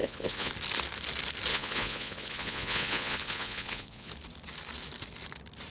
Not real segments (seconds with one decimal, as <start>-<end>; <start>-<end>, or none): 0.0-0.5; 1.5-4.1